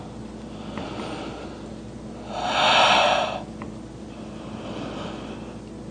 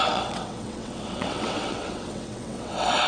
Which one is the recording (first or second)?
first